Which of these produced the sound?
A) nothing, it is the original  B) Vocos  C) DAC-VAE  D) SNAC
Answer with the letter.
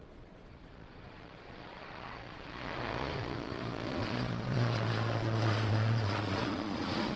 B